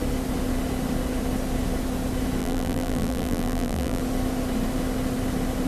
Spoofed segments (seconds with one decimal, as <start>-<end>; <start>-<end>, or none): 2.4-4.0